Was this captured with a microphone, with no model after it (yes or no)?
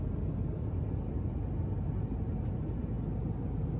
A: yes